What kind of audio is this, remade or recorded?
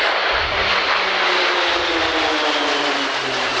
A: recorded